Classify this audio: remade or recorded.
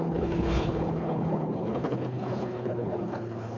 remade